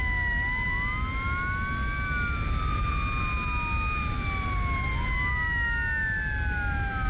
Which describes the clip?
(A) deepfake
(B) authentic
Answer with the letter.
B